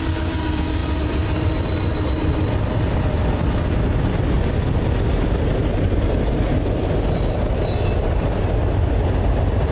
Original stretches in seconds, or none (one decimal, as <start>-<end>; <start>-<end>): 0.0-9.7